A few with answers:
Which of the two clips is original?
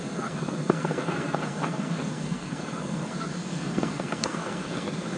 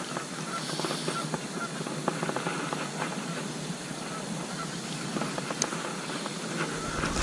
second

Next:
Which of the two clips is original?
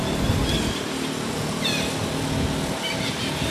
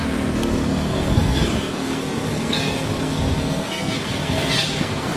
first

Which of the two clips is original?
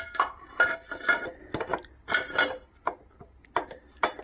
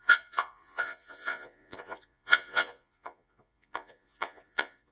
first